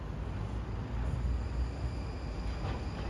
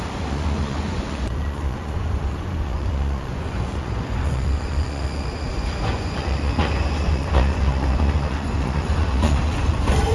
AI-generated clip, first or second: second